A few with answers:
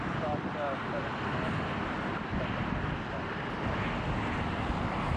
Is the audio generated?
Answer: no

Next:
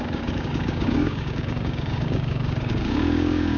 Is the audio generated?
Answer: yes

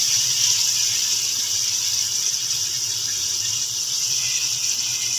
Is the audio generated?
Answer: no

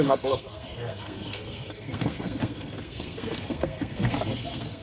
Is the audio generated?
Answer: yes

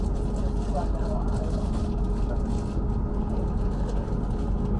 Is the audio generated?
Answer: no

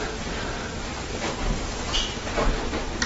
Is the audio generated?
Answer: yes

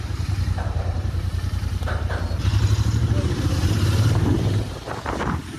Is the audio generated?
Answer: yes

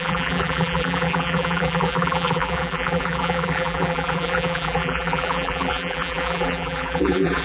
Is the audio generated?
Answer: yes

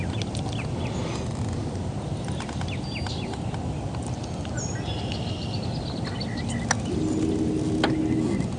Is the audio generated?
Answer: no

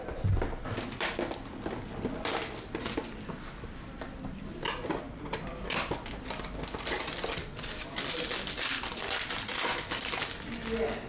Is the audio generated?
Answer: no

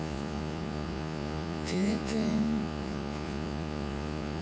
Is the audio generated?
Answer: yes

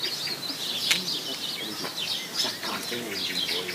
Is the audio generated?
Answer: no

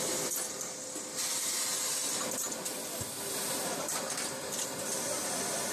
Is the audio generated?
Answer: no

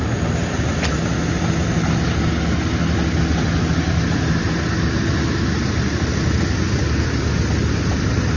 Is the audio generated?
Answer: no